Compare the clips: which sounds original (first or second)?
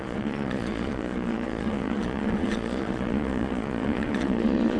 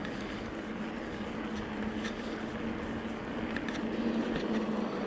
second